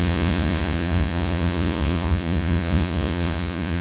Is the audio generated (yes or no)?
yes